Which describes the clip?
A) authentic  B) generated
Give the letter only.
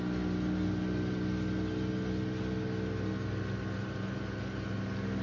A